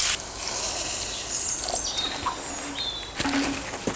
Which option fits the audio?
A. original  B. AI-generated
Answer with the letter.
A